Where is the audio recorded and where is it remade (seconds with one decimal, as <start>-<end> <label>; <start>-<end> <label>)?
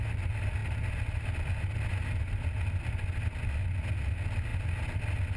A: 0.0-5.4 recorded